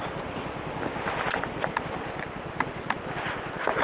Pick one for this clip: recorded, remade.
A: recorded